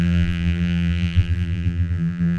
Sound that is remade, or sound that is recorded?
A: remade